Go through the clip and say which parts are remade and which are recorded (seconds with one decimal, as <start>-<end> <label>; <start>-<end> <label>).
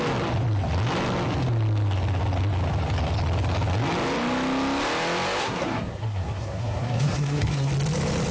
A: 0.0-5.4 recorded; 5.4-7.7 remade; 7.7-8.3 recorded